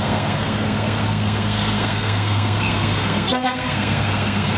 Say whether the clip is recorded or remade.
remade